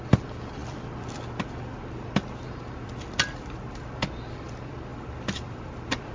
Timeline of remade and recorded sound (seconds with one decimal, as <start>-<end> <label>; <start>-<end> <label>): 0.0-6.1 recorded